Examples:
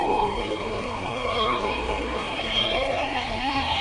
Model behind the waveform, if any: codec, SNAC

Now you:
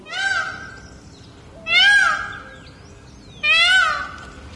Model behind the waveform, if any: none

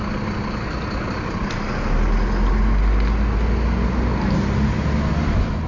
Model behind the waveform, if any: none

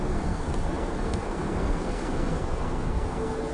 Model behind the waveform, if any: codec, SNAC